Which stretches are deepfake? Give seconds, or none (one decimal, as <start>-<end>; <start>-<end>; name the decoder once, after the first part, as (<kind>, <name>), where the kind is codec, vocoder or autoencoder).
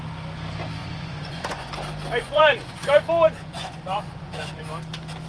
0.8-1.7 (vocoder, Vocos); 2.2-4.6